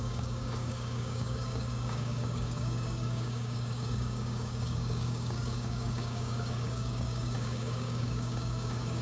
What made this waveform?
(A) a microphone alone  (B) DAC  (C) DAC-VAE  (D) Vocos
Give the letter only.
B